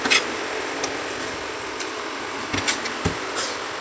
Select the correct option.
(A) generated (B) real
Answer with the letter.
B